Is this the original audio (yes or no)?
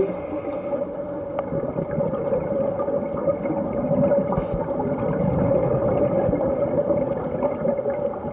yes